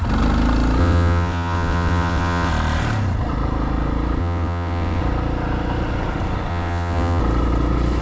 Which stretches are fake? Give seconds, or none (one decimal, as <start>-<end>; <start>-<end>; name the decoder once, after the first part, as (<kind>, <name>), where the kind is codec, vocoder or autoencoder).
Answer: 0.8-2.5 (vocoder, WaveNeXt); 4.2-5.0; 6.5-7.2